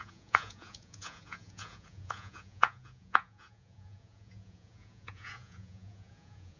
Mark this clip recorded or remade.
remade